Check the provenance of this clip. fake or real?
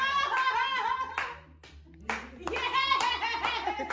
real